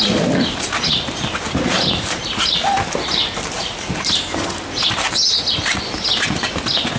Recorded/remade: recorded